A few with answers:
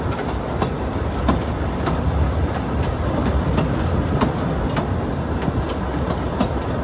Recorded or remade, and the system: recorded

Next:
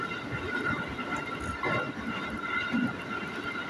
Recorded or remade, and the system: recorded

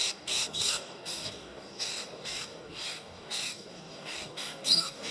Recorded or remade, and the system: remade, codec, DAC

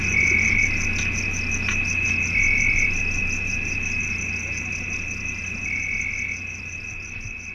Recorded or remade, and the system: recorded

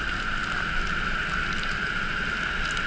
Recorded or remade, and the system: recorded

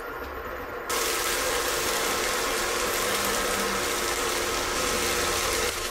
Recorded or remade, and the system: recorded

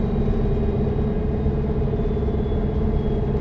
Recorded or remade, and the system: recorded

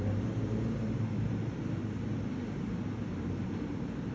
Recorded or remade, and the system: remade, vocoder, BigVGAN v2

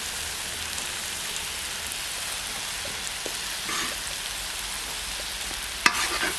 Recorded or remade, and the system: recorded